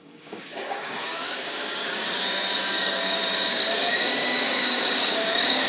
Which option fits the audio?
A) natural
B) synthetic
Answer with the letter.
B